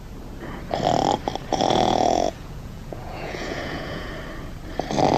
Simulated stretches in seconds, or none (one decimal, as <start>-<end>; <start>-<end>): 1.5-4.1